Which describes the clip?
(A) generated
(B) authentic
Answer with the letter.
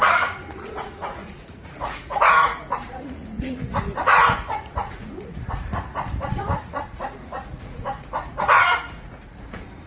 A